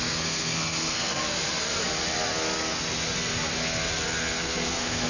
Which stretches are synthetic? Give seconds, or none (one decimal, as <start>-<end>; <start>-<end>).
0.0-1.2; 4.3-5.1